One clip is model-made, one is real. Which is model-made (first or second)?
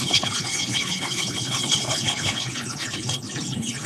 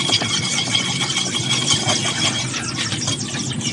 first